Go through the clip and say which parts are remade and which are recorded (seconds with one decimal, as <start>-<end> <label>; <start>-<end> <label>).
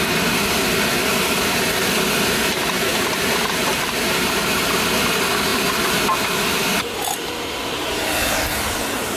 0.0-2.9 recorded; 2.9-4.7 remade; 4.7-5.5 recorded; 5.5-6.0 remade; 6.0-9.2 recorded